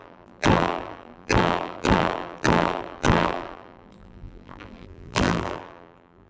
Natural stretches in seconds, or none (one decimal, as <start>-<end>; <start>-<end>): none